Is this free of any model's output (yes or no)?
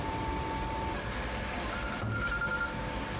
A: yes